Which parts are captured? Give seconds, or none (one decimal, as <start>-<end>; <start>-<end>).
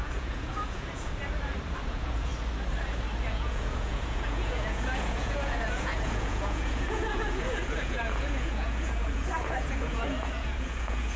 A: 1.2-1.9; 2.3-3.3